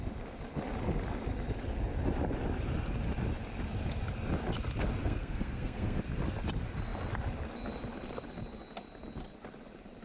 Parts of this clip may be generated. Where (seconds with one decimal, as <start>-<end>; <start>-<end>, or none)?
5.0-6.0